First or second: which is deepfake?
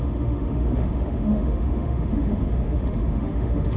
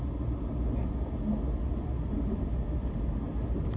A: first